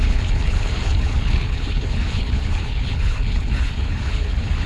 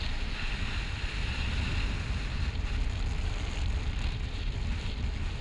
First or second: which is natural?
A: second